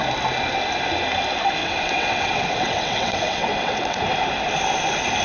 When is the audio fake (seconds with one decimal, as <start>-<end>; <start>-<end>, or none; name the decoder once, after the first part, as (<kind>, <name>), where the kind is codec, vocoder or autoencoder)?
1.6-4.0 (vocoder, WaveNeXt)